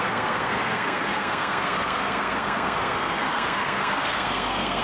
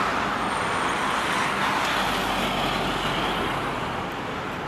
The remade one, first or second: first